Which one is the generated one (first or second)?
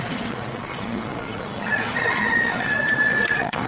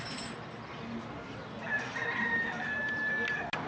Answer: first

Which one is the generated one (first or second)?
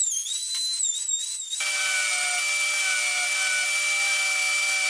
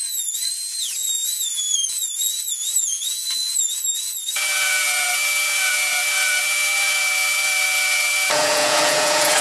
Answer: second